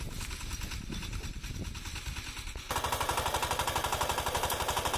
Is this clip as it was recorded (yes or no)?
yes